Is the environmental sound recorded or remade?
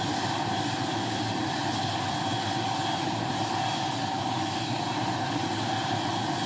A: recorded